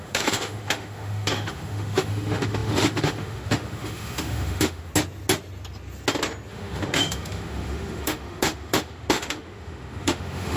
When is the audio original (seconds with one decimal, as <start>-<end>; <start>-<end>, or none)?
4.9-6.5